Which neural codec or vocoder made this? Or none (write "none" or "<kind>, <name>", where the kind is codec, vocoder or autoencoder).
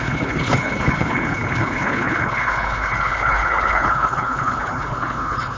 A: codec, HILCodec